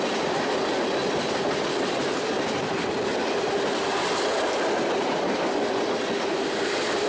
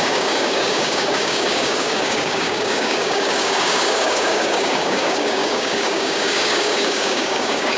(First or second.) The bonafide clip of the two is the first